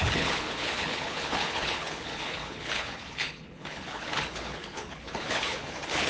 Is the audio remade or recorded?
remade